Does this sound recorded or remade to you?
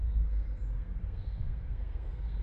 remade